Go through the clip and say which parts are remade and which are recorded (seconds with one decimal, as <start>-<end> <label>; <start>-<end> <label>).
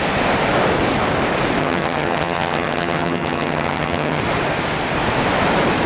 0.0-1.6 recorded; 1.6-4.2 remade; 4.2-5.9 recorded